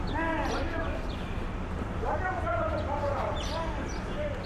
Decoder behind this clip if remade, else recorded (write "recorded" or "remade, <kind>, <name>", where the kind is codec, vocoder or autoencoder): recorded